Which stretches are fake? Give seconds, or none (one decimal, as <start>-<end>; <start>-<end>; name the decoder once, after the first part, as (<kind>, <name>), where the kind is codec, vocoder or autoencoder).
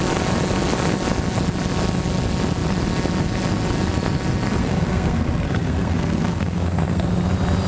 4.6-7.1 (codec, SNAC)